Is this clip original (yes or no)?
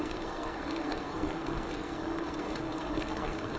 no